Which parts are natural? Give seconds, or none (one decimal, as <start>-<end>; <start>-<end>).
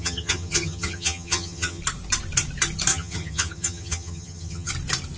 1.8-2.9; 4.7-5.2